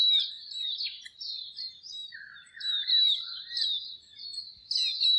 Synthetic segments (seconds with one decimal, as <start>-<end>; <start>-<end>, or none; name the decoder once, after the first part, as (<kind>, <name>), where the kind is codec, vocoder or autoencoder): none